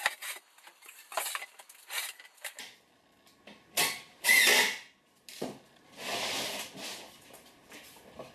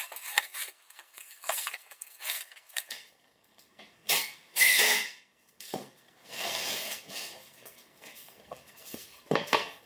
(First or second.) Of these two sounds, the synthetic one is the second